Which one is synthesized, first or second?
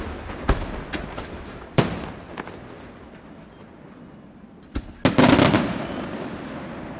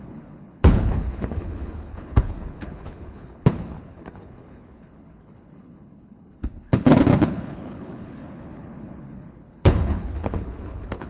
second